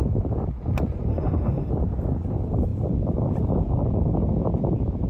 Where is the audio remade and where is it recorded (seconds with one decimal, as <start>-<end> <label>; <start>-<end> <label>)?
0.0-1.1 recorded; 1.1-1.7 remade; 1.7-5.1 recorded